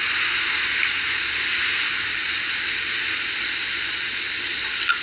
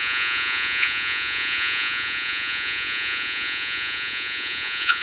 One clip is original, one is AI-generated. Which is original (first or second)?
first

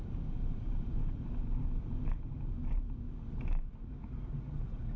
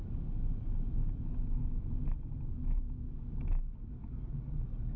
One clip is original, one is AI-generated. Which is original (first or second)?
second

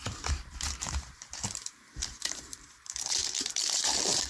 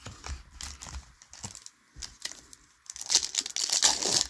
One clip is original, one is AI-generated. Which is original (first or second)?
second